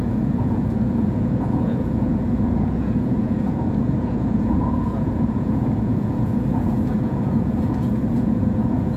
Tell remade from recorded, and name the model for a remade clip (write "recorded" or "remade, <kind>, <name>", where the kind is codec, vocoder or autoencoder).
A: remade, vocoder, Vocos